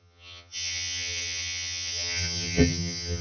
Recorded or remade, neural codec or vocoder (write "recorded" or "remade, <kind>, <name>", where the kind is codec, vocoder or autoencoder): remade, vocoder, HiFi-GAN